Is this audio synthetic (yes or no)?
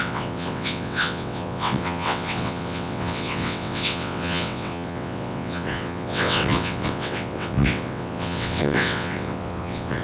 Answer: yes